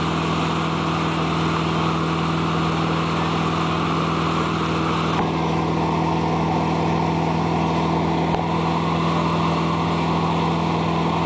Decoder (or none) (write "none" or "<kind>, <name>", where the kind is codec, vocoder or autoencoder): none